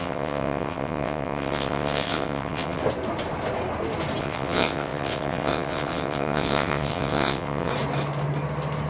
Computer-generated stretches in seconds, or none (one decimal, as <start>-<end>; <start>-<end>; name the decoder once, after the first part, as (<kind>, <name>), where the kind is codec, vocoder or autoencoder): 0.0-2.8 (vocoder, WaveNeXt); 4.2-7.7